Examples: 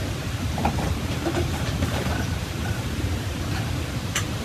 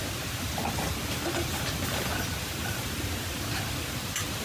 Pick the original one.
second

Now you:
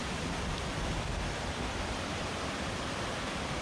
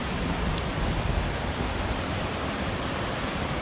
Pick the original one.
second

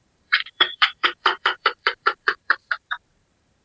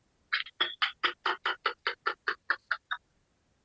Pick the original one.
second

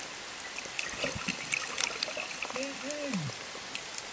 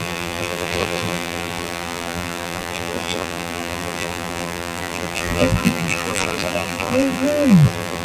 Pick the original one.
first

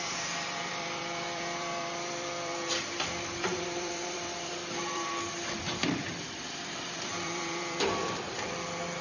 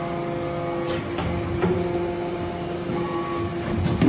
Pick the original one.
second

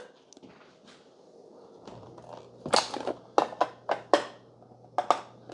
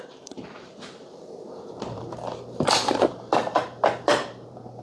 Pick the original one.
first